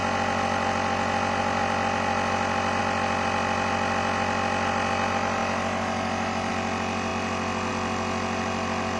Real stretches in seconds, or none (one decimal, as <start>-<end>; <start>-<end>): 0.0-9.0

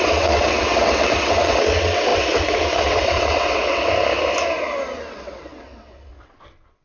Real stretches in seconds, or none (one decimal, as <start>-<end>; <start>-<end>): 3.8-5.1

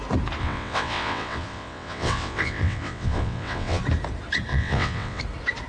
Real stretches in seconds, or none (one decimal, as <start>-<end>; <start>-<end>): 0.0-0.4; 3.8-4.5; 5.2-5.7

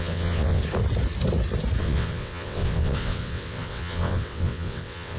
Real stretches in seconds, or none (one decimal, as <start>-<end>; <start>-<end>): 0.6-1.8

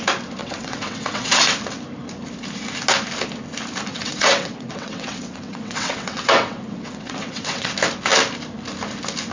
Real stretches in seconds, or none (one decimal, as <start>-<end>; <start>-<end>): 0.0-0.4; 1.4-3.9; 7.7-9.3